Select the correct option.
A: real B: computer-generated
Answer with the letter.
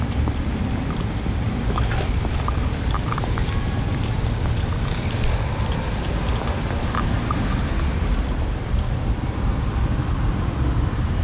B